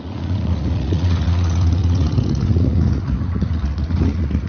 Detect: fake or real fake